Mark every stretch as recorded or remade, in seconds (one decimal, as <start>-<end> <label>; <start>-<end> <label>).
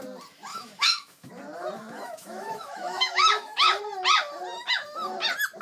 0.0-0.5 recorded; 0.5-1.3 remade; 1.3-1.8 recorded; 1.8-3.8 remade; 3.8-5.6 recorded